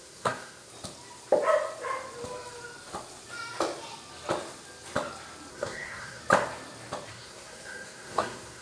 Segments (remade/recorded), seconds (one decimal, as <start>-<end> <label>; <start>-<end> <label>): 0.0-0.7 remade; 0.7-5.5 recorded; 5.5-6.2 remade; 6.2-7.1 recorded; 7.1-8.6 remade